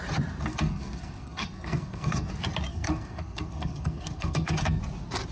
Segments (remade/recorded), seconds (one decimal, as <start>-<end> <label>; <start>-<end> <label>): 0.0-0.5 recorded; 0.5-2.3 remade; 2.3-2.7 recorded; 2.7-4.8 remade; 4.8-5.3 recorded